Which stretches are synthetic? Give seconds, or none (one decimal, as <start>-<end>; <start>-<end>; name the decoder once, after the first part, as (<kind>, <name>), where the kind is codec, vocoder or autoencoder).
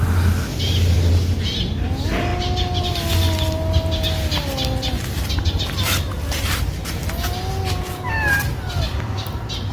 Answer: 0.5-1.1 (vocoder, BigVGAN v2)